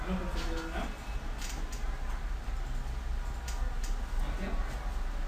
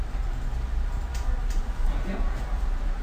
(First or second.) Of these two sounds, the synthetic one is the second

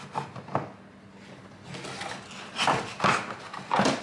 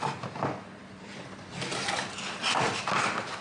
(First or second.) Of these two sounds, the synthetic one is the second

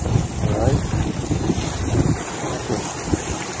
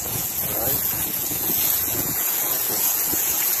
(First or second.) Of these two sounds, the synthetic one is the second